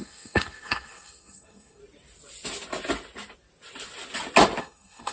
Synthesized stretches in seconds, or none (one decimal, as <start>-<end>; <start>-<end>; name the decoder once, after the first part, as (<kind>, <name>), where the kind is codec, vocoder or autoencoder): 0.0-1.8 (codec, SNAC); 4.6-5.1